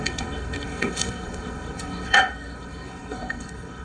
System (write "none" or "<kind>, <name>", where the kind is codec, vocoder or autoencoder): codec, SNAC